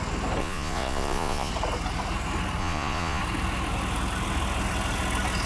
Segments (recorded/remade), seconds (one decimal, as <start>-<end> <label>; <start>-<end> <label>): 0.0-0.4 recorded; 0.4-1.5 remade; 1.5-2.6 recorded; 2.6-3.2 remade; 3.2-5.5 recorded